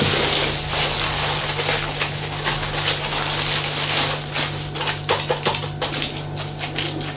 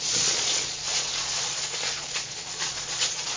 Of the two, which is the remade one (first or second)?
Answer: second